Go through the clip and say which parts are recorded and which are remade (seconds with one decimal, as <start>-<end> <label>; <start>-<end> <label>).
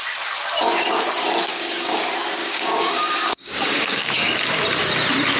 0.0-1.5 recorded; 1.5-2.0 remade; 2.0-2.4 recorded; 2.4-4.3 remade; 4.3-5.4 recorded